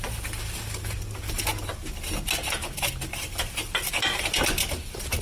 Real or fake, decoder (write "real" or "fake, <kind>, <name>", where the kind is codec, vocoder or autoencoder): real